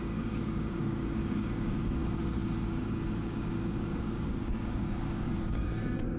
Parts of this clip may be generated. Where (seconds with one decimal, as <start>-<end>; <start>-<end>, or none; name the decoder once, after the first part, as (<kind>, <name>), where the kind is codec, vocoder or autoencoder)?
0.0-6.2 (codec, DAC)